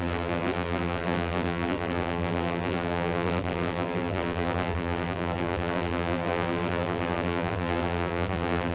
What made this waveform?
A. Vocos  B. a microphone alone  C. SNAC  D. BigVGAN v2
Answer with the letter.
D